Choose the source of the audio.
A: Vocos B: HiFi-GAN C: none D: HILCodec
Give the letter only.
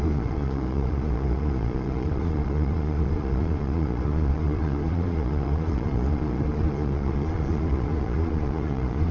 A